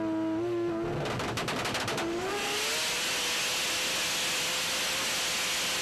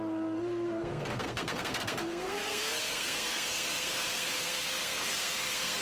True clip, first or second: first